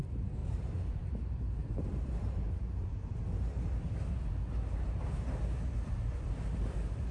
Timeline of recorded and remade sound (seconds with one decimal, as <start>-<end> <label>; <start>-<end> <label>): 0.0-0.4 recorded; 0.4-1.1 remade; 1.1-1.6 recorded; 1.6-3.1 remade; 3.1-7.1 recorded